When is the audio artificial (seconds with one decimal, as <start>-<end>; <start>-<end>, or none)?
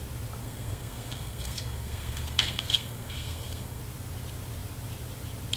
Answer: 0.4-3.8